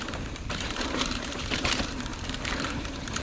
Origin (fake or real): fake